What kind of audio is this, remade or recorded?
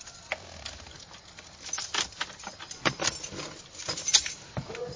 recorded